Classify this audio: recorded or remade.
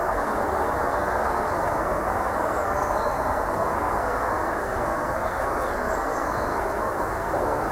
remade